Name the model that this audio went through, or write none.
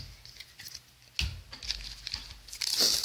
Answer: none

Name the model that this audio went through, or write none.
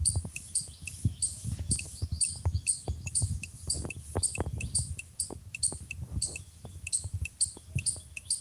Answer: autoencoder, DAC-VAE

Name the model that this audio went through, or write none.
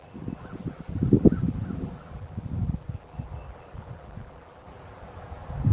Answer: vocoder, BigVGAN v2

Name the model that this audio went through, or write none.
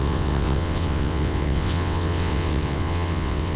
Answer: vocoder, WaveNeXt